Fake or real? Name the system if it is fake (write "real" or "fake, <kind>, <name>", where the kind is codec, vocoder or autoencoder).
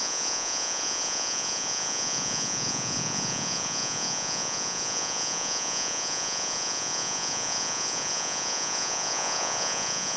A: fake, vocoder, Vocos